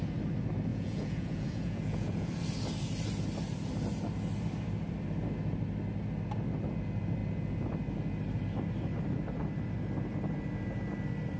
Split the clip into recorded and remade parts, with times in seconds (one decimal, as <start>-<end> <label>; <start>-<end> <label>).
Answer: 0.0-0.7 recorded; 0.7-2.3 remade; 2.3-11.4 recorded